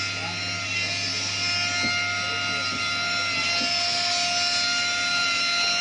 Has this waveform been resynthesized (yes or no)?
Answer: no